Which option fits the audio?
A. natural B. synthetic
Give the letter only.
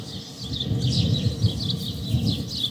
A